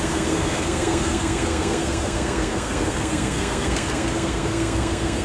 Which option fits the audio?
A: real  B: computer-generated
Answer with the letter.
B